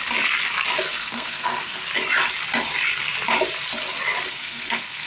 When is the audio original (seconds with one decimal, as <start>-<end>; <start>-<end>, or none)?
0.0-0.9; 1.8-4.3